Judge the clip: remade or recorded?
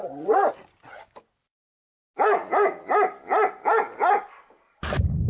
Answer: recorded